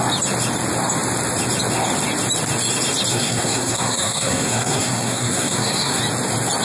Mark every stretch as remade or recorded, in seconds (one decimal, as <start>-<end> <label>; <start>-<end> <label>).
0.0-3.1 recorded; 3.1-6.0 remade; 6.0-6.6 recorded